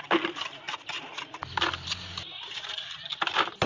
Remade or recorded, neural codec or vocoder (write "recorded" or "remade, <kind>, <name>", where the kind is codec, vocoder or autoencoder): recorded